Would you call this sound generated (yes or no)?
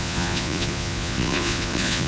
yes